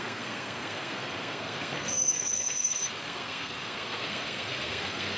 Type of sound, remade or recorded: remade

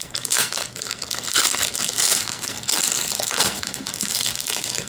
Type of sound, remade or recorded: remade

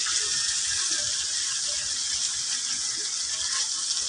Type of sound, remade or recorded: recorded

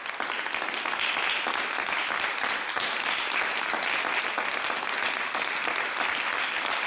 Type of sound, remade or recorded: recorded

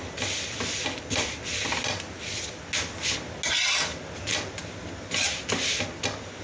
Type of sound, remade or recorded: recorded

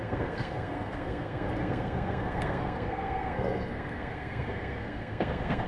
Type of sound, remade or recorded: remade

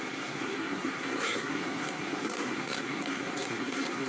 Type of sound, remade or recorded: remade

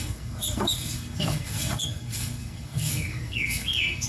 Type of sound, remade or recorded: remade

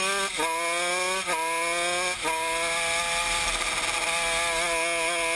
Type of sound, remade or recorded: recorded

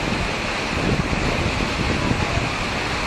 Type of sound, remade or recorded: recorded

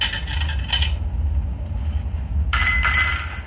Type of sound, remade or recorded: recorded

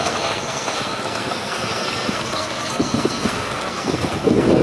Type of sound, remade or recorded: remade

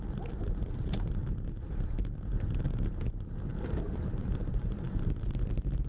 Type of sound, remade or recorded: recorded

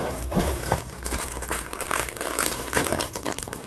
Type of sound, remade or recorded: remade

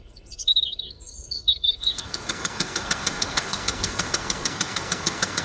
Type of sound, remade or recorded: remade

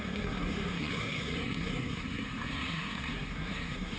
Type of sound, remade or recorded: remade